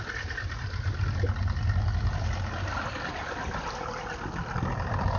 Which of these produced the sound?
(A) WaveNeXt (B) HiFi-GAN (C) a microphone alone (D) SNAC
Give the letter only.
C